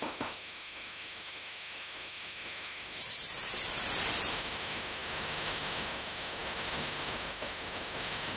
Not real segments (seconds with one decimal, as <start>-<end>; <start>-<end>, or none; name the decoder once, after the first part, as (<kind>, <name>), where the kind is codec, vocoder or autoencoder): 0.0-3.0 (autoencoder, DAC-VAE); 4.3-8.4